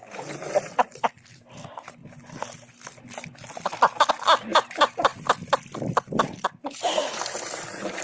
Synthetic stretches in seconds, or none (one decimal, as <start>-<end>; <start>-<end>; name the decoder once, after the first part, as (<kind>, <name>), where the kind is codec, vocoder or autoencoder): none